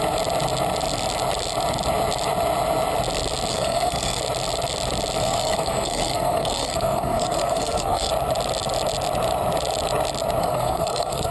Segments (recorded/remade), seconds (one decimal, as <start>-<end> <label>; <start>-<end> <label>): 0.0-3.5 recorded; 3.5-4.2 remade; 4.2-5.2 recorded; 5.2-8.1 remade; 8.1-10.4 recorded; 10.4-11.3 remade